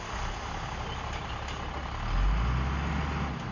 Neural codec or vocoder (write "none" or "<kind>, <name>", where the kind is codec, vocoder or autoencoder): none